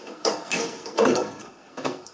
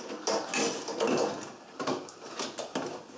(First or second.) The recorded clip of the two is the second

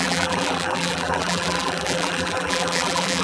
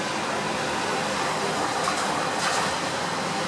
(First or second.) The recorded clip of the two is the second